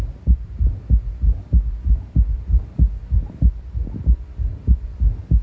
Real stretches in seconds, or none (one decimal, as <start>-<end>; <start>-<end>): 0.0-5.4